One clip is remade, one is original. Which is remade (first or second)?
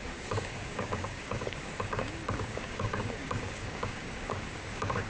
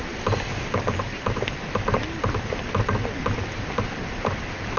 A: first